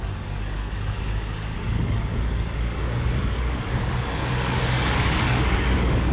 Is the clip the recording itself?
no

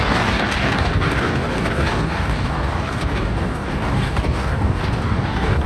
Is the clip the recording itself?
no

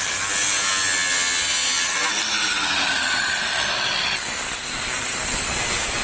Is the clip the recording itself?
yes